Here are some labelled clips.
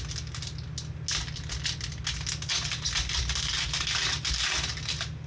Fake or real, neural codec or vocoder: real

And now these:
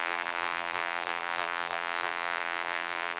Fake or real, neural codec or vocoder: fake, vocoder, BigVGAN v2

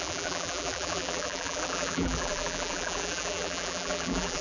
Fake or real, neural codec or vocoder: fake, vocoder, BigVGAN v2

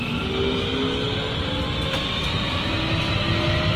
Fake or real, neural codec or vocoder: real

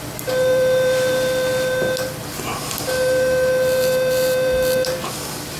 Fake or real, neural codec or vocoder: fake, vocoder, BigVGAN v2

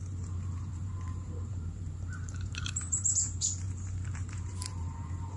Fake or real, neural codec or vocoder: fake, vocoder, BigVGAN v2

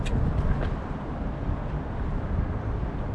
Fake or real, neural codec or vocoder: real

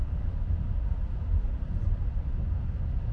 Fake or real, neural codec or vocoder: real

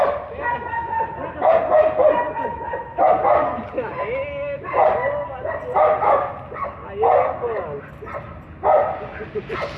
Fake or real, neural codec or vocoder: real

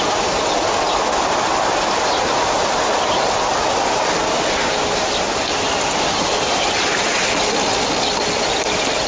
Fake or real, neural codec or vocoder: real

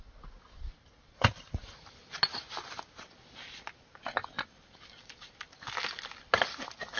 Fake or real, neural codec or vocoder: real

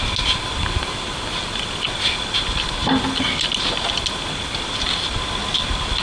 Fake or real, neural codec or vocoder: real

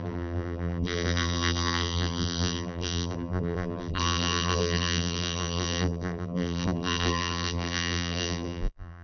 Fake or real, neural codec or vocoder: fake, vocoder, BigVGAN v2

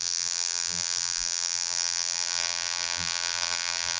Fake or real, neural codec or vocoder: fake, vocoder, BigVGAN v2